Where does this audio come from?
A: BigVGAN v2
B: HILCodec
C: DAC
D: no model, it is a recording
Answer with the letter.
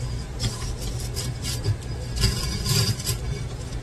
D